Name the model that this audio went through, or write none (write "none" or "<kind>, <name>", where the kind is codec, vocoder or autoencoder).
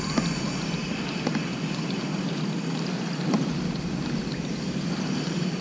none